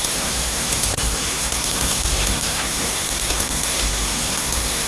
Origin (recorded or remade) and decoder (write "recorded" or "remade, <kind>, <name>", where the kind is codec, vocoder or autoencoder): remade, codec, SNAC